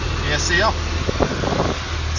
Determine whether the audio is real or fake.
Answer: real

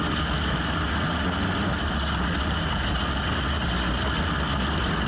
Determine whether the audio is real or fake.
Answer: real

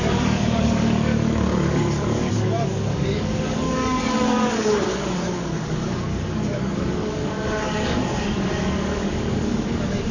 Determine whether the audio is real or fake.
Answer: fake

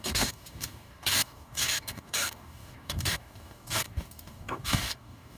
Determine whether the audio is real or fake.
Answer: fake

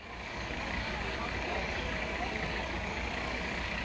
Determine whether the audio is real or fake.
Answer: fake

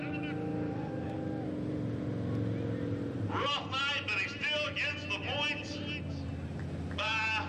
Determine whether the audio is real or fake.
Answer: real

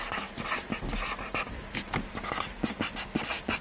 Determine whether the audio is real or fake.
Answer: real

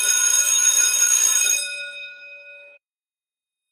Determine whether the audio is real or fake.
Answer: fake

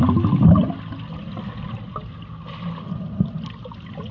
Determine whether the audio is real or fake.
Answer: real